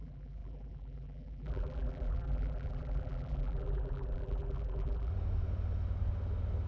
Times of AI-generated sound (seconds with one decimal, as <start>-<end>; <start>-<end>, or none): 0.0-5.1